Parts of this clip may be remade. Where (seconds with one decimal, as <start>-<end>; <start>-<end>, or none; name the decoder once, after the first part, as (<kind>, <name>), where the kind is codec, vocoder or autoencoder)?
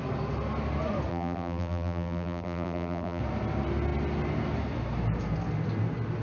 1.1-3.2 (vocoder, BigVGAN v2)